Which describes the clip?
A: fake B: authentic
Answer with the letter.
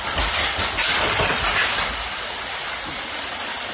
B